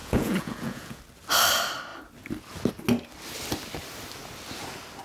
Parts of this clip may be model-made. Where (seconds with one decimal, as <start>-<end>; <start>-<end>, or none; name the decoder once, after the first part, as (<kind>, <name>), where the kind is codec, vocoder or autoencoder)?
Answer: 0.0-1.0 (vocoder, Vocos)